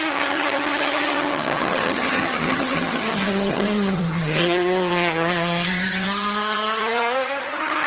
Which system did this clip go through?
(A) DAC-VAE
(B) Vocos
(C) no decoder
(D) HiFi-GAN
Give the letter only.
D